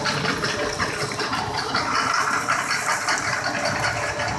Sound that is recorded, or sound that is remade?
recorded